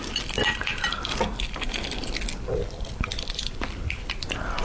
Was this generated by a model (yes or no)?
yes